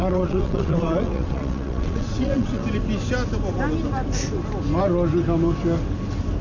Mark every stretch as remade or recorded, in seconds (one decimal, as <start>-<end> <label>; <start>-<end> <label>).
0.0-2.6 remade; 2.6-6.4 recorded